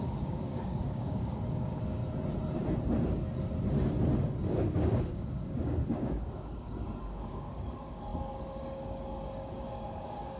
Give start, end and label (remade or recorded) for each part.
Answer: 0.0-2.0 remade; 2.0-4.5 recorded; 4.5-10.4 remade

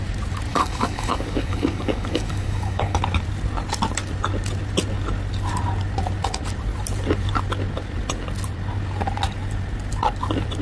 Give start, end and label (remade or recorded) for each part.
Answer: 0.0-0.5 recorded; 0.5-3.0 remade; 3.0-10.6 recorded

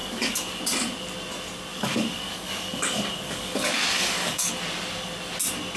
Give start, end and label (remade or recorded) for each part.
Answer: 0.0-0.6 remade; 0.6-1.7 recorded; 1.7-4.5 remade; 4.5-5.8 recorded

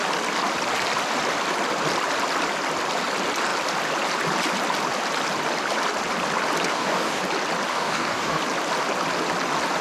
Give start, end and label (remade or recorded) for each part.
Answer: 0.0-6.7 recorded; 6.7-7.2 remade; 7.2-7.7 recorded; 7.7-8.4 remade; 8.4-9.8 recorded